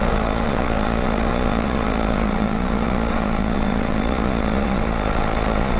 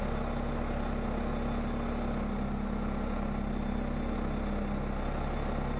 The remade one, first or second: first